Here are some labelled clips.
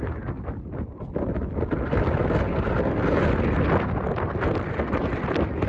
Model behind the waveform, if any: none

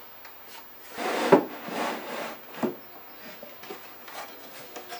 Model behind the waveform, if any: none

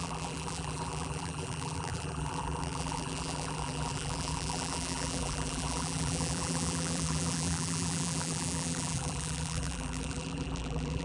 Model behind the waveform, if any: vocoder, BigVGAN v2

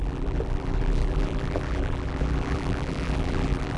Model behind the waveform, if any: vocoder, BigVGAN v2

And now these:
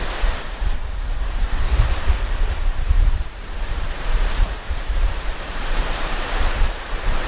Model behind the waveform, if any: vocoder, BigVGAN v2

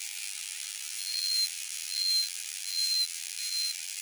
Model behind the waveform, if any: vocoder, BigVGAN v2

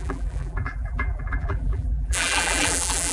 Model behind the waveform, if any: vocoder, BigVGAN v2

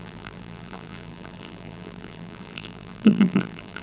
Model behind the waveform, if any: vocoder, BigVGAN v2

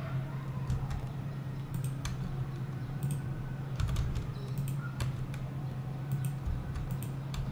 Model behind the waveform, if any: vocoder, BigVGAN v2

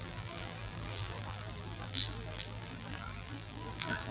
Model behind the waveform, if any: vocoder, BigVGAN v2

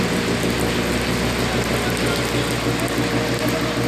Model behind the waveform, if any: none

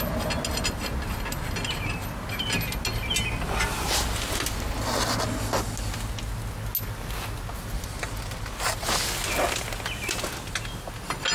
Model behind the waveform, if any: none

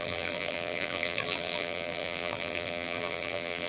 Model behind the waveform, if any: vocoder, BigVGAN v2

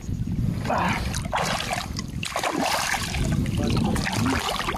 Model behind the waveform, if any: none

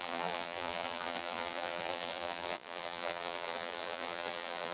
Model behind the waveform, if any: vocoder, BigVGAN v2